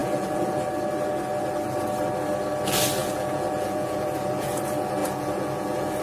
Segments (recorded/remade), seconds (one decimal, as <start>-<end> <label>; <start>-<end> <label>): 0.0-0.7 remade; 0.7-3.0 recorded; 3.0-4.6 remade; 4.6-5.0 recorded; 5.0-6.0 remade

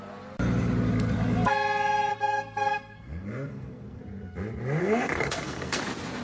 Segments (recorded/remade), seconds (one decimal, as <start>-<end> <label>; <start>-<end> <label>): 0.0-2.1 recorded; 2.1-4.0 remade; 4.0-4.8 recorded; 4.8-5.8 remade; 5.8-6.2 recorded

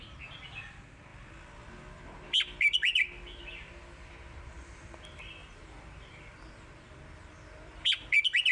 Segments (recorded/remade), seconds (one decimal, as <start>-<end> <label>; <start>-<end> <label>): 0.0-1.1 recorded; 1.1-3.4 remade; 3.4-5.4 recorded; 5.4-8.1 remade; 8.1-8.5 recorded

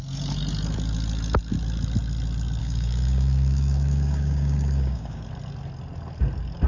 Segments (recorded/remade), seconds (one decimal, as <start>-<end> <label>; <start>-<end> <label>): 0.0-2.6 recorded; 2.6-5.2 remade; 5.2-6.7 recorded

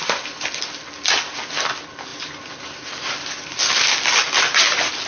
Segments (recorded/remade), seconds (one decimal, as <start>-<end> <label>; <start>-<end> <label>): 0.0-5.1 recorded

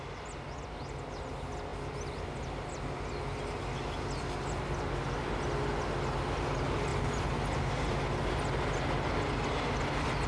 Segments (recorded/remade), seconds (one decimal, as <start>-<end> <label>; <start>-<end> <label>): 0.0-10.3 recorded